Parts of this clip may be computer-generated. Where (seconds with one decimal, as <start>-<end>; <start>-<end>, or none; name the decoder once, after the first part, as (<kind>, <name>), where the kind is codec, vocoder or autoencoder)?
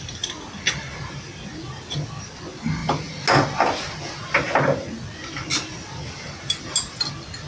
none